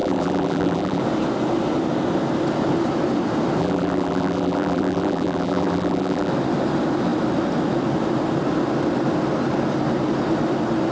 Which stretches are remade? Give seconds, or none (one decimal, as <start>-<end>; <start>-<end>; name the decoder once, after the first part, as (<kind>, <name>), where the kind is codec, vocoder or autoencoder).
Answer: 0.0-1.0 (vocoder, BigVGAN v2); 3.6-6.3